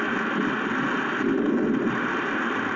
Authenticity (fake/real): real